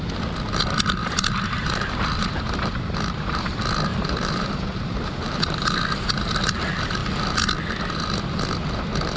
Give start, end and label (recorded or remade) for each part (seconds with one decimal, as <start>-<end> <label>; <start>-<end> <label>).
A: 0.0-1.0 recorded; 1.0-3.4 remade; 3.4-3.9 recorded; 3.9-5.7 remade; 5.7-9.2 recorded